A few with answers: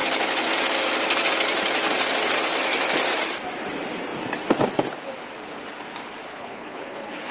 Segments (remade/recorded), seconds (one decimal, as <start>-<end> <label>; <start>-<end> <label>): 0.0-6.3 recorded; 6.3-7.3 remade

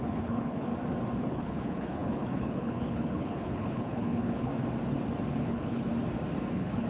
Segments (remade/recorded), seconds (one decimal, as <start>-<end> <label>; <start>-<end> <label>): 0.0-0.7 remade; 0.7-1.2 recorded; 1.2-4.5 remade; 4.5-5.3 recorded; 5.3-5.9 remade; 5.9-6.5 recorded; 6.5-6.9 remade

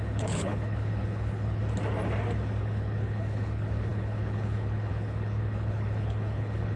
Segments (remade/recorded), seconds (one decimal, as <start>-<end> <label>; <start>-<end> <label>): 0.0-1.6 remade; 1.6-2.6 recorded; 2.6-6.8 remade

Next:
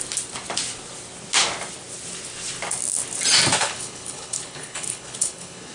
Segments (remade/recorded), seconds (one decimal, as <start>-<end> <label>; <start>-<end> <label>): 0.0-3.6 recorded; 3.6-5.7 remade

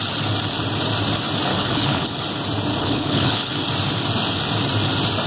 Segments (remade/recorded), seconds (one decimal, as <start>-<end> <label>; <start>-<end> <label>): 0.0-1.5 recorded; 1.5-2.1 remade; 2.1-2.8 recorded; 2.8-3.5 remade; 3.5-5.3 recorded

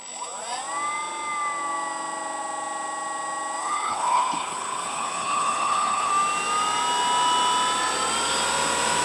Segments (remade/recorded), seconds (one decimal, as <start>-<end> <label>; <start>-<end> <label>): 0.0-3.6 recorded; 3.6-6.1 remade; 6.1-9.0 recorded